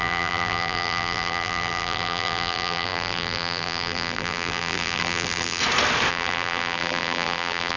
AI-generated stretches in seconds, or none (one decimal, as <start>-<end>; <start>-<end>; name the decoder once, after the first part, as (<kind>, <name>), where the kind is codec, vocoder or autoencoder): 0.0-5.6 (vocoder, BigVGAN v2); 6.1-7.8